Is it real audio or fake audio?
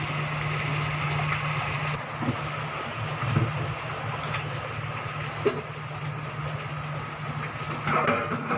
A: real